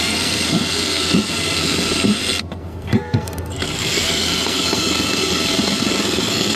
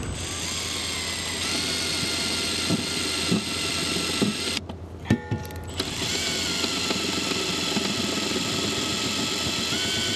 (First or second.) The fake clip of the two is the first